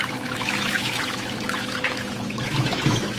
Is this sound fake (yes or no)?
yes